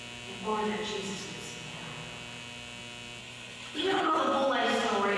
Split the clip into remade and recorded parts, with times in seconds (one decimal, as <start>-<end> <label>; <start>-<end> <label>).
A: 0.0-3.2 recorded; 3.2-4.2 remade; 4.2-5.2 recorded